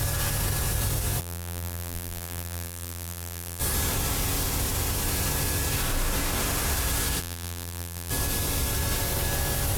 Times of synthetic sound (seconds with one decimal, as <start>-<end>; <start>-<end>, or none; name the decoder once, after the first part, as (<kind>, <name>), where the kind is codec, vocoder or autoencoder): 1.2-3.6 (vocoder, BigVGAN v2); 7.2-8.1